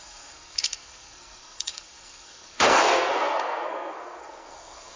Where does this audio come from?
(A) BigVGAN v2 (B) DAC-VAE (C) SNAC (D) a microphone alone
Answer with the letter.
C